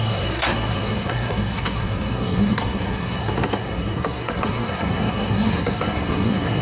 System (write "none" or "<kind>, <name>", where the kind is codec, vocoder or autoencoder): codec, SNAC